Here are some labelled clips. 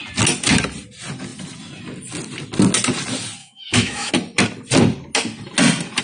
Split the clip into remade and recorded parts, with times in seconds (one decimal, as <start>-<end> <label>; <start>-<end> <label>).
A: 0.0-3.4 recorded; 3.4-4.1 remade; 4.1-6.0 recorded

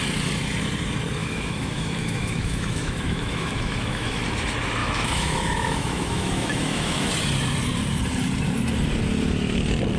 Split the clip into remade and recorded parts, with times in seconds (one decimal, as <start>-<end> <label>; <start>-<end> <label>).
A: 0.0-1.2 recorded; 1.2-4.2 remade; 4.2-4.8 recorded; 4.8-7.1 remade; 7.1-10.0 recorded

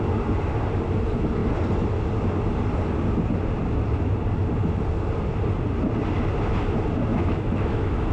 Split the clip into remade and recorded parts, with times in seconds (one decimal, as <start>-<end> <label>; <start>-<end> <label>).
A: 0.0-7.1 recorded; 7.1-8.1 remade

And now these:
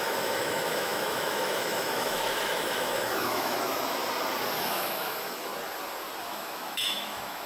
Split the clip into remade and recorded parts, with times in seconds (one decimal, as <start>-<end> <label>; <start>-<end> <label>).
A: 0.0-4.0 remade; 4.0-4.6 recorded; 4.6-5.5 remade; 5.5-6.2 recorded; 6.2-7.5 remade